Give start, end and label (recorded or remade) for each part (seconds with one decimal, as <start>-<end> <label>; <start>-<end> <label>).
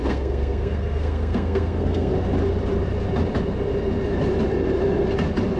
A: 0.0-2.1 remade; 2.1-5.6 recorded